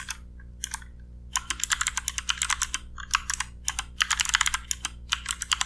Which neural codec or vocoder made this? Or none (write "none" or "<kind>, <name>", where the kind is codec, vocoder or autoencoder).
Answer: none